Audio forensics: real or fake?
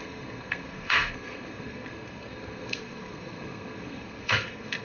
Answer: fake